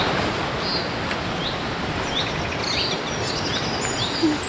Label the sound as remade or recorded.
recorded